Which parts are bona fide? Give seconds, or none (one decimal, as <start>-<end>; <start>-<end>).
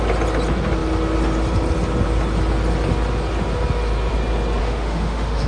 0.0-4.6